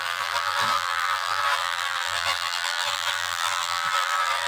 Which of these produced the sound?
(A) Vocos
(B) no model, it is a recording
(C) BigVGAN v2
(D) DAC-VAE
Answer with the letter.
C